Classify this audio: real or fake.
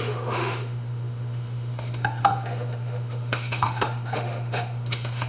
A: fake